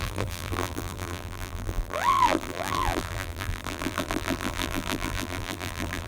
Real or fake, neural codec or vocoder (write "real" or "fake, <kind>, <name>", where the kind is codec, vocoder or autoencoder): fake, vocoder, BigVGAN v2